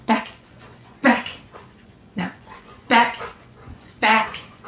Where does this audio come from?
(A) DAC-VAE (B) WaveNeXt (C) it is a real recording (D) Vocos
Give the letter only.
D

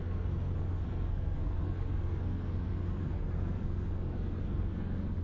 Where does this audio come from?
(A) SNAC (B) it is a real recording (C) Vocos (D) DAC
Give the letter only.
A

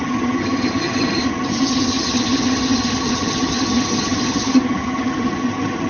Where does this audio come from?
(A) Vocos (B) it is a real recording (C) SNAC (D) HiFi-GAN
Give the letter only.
D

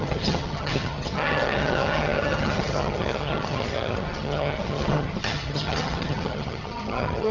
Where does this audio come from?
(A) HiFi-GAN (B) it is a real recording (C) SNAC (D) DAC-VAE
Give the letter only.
A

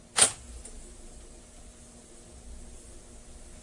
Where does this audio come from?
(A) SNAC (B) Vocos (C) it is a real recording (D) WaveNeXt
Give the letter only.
C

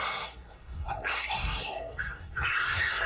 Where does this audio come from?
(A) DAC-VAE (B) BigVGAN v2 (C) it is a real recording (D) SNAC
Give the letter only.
D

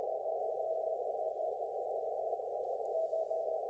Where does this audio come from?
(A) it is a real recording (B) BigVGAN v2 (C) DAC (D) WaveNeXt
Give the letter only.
A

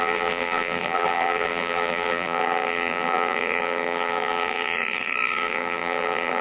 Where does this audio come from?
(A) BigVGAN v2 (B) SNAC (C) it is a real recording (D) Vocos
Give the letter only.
A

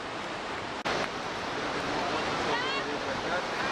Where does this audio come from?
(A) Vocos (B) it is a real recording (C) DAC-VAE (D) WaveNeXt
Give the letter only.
B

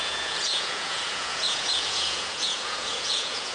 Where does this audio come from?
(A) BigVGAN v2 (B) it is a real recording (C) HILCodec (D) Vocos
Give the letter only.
D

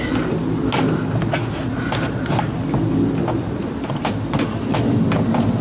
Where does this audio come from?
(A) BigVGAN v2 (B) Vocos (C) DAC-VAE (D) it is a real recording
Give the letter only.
D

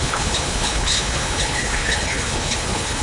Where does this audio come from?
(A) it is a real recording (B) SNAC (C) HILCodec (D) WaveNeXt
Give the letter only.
C